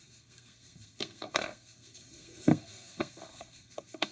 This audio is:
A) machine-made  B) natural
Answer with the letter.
A